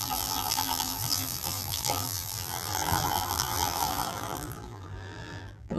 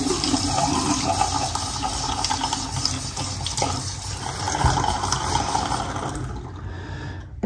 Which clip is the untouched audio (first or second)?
second